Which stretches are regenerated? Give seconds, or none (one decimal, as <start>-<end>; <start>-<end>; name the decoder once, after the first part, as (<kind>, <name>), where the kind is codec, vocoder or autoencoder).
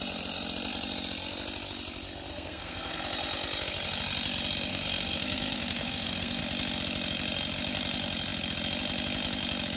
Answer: 2.3-3.0 (codec, SNAC); 4.7-6.4